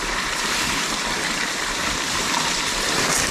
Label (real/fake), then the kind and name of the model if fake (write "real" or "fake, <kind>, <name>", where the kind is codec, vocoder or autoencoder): real